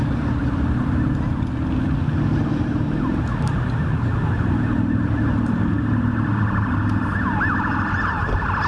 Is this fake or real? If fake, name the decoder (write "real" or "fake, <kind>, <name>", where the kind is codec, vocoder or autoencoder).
real